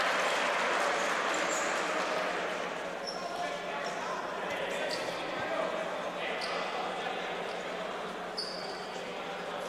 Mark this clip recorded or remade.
recorded